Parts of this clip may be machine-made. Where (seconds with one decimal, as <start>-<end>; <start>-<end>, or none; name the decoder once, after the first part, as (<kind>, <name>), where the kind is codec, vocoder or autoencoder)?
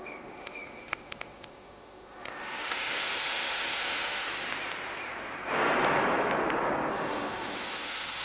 0.0-4.3 (autoencoder, DAC-VAE); 6.9-8.2